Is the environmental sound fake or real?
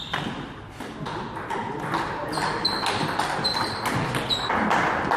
real